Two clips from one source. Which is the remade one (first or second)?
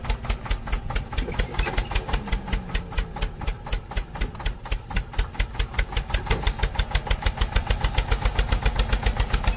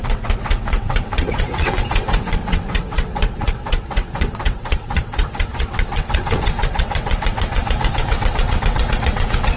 second